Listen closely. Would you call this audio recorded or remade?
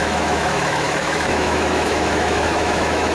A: remade